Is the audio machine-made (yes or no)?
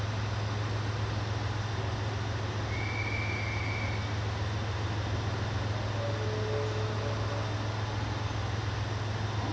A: no